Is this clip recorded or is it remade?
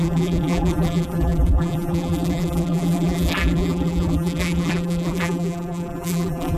remade